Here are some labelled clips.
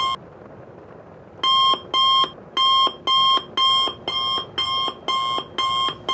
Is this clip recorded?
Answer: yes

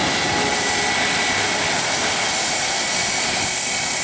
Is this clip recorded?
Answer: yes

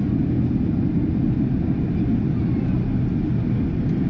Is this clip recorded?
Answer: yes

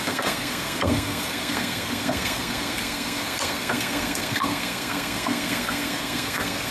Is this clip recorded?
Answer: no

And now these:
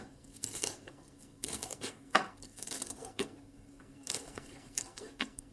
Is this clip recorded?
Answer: no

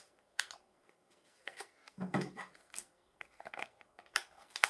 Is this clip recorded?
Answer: no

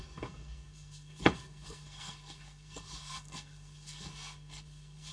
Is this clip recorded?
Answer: no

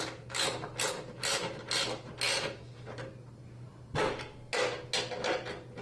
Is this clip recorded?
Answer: yes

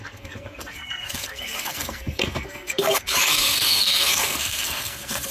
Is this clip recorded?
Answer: no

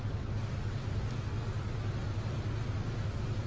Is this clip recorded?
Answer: yes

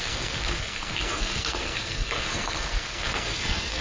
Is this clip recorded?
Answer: no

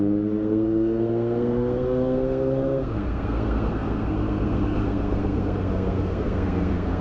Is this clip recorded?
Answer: no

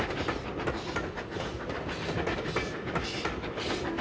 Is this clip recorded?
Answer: yes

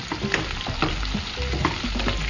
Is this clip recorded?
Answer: yes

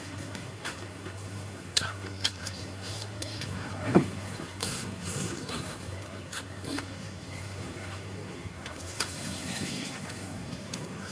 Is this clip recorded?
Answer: no